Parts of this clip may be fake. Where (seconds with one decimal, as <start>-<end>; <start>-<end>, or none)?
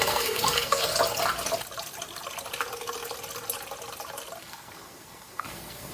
0.0-0.9; 4.4-5.9